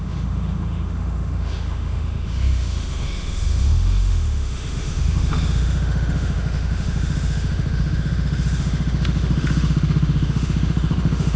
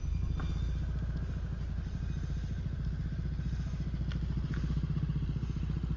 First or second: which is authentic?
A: second